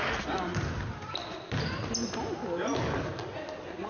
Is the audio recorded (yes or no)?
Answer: yes